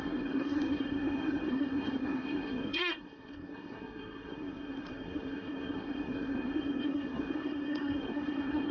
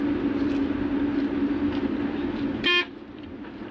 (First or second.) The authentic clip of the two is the second